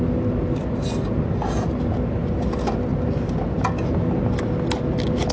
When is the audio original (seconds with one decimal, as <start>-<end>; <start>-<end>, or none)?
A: 0.0-5.3